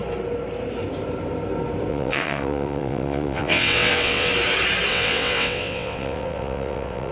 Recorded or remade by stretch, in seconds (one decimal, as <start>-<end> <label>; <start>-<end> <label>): 0.0-1.9 recorded; 1.9-4.3 remade; 4.3-4.9 recorded; 4.9-7.1 remade